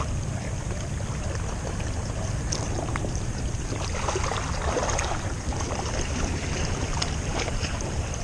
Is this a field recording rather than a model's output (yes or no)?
yes